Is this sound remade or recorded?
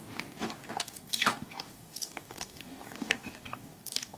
remade